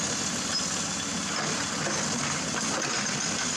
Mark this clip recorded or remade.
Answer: recorded